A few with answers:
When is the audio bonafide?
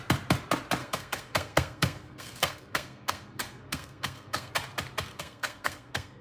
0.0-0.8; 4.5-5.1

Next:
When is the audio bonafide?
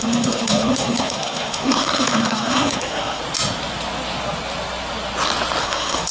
3.2-5.6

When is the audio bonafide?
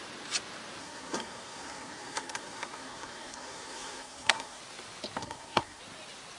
0.0-0.8; 4.6-5.2; 5.8-6.4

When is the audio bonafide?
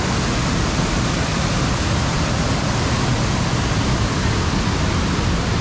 0.0-5.6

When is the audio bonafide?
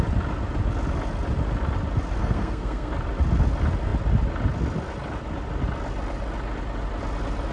0.0-2.2; 2.9-7.5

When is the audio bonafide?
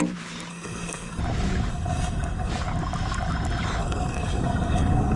0.0-0.5; 1.2-1.7; 2.5-3.8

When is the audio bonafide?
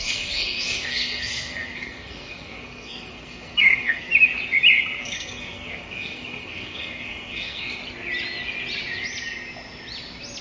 4.1-5.0; 7.8-10.4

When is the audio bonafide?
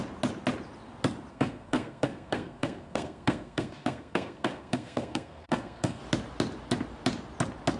0.0-1.3; 6.0-7.8